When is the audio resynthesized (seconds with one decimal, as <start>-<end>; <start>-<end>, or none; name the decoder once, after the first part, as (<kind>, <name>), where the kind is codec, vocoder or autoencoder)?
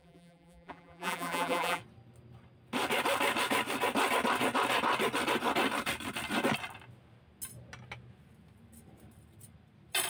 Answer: 0.0-1.8 (vocoder, BigVGAN v2)